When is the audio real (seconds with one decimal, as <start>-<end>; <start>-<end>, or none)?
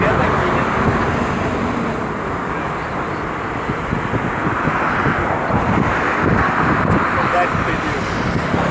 0.0-8.7